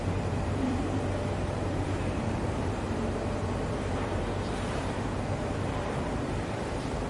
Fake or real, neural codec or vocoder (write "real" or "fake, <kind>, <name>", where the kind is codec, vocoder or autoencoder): fake, vocoder, BigVGAN v2